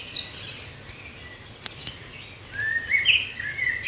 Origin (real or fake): real